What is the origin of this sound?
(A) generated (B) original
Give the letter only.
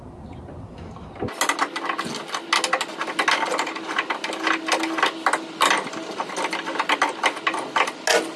B